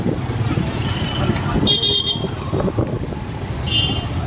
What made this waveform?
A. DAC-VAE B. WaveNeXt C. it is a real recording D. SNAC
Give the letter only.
C